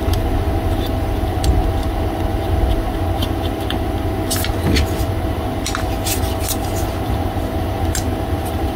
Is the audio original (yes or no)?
yes